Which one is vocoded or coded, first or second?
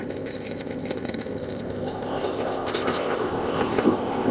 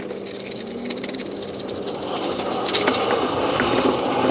first